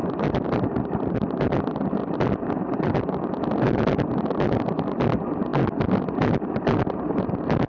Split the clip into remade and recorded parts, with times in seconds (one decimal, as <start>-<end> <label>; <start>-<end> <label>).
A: 0.0-3.6 remade; 3.6-7.7 recorded